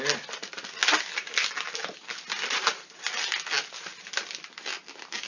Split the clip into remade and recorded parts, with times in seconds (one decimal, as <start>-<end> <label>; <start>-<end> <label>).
0.0-5.3 recorded